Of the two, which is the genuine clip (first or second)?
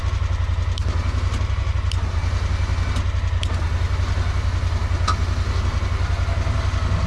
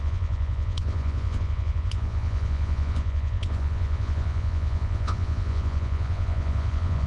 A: first